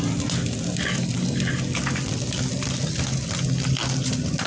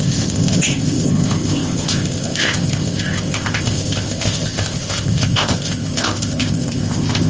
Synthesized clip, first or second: second